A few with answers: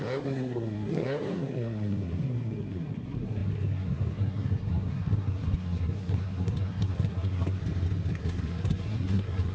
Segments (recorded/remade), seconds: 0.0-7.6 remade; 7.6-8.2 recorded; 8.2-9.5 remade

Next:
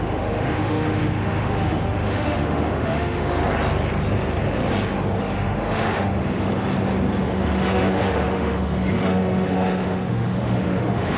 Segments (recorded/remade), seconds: 0.0-3.4 remade; 3.4-5.2 recorded; 5.2-6.5 remade; 6.5-7.2 recorded; 7.2-11.2 remade

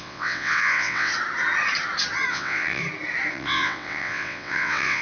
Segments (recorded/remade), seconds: 0.0-1.1 remade; 1.1-2.3 recorded; 2.3-2.8 remade; 2.8-3.3 recorded; 3.3-5.0 remade

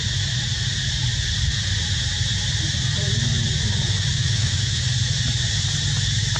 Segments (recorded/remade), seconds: 0.0-4.2 recorded; 4.2-4.8 remade; 4.8-6.4 recorded